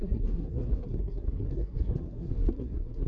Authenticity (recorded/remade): remade